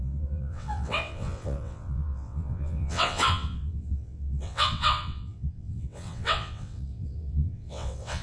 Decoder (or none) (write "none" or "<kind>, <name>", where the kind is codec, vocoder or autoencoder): vocoder, WaveNeXt